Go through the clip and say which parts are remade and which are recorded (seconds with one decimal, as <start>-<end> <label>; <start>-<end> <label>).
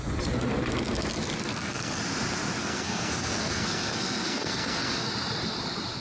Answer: 0.0-1.5 recorded; 1.5-2.0 remade; 2.0-2.6 recorded; 2.6-5.1 remade; 5.1-6.0 recorded